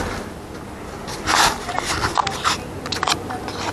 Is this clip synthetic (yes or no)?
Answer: no